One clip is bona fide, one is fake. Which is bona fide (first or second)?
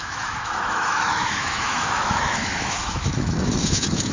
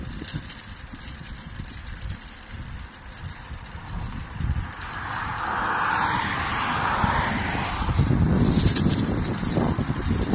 second